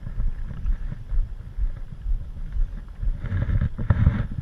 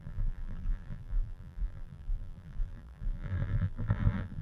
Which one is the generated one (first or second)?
second